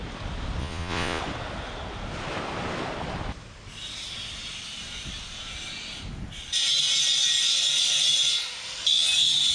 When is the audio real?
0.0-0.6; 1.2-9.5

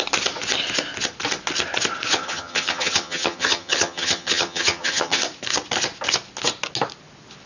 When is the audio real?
0.0-2.1; 5.2-7.5

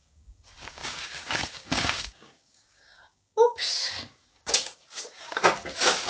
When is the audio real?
none